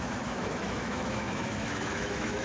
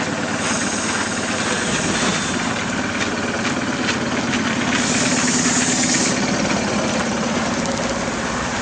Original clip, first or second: second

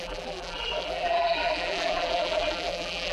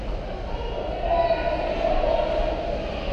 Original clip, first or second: second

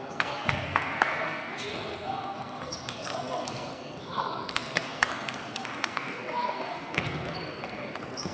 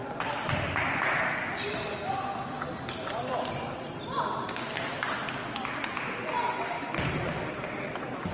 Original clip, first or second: second